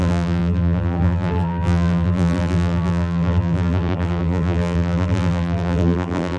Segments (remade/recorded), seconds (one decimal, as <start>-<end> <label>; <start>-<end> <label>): 0.0-6.4 remade